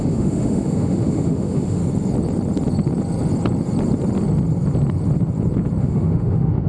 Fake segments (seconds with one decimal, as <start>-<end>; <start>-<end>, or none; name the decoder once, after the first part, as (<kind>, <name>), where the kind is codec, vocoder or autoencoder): 0.0-1.8 (autoencoder, DAC-VAE); 5.8-6.7